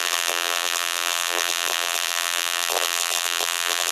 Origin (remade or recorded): remade